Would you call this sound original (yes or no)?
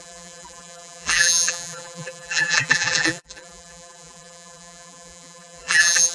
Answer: no